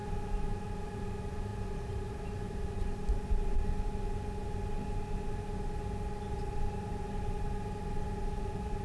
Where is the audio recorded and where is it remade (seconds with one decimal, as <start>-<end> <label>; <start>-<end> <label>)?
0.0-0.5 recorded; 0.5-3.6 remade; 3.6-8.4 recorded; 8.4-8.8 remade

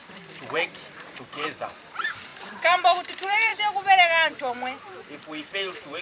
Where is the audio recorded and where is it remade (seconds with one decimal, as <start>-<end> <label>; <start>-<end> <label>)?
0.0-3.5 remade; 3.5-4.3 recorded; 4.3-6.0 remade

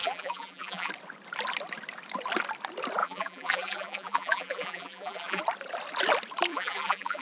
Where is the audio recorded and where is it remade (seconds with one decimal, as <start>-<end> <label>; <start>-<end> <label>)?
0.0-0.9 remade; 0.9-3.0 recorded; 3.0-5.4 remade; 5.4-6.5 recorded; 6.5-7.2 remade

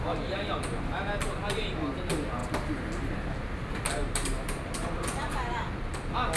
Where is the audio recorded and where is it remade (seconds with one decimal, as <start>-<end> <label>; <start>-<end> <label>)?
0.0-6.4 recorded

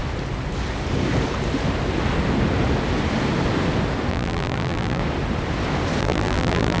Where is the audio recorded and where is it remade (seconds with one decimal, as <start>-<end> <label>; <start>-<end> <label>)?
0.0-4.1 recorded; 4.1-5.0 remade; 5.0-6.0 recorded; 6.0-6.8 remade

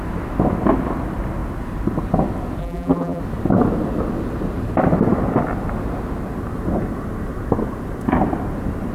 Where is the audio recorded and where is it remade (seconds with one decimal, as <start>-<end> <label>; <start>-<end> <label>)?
0.0-2.6 recorded; 2.6-3.2 remade; 3.2-8.9 recorded

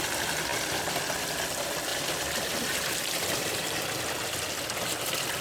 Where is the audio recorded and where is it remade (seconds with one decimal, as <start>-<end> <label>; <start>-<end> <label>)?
0.0-1.9 recorded; 1.9-3.8 remade; 3.8-5.4 recorded

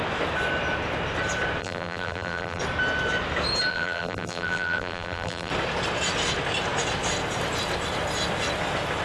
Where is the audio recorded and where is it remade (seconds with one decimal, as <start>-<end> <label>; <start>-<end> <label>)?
0.0-1.6 recorded; 1.6-2.6 remade; 2.6-3.7 recorded; 3.7-5.5 remade; 5.5-9.0 recorded